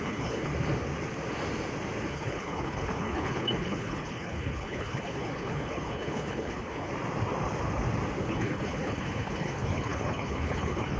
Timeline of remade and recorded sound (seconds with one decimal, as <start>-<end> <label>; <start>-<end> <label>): 0.0-0.5 remade; 0.5-2.1 recorded; 2.1-6.9 remade; 6.9-8.2 recorded; 8.2-11.0 remade